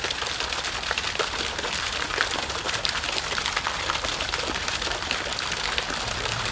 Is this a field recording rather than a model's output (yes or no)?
no